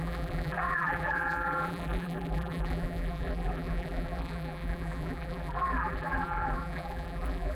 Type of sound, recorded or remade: remade